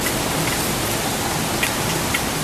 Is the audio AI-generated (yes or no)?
no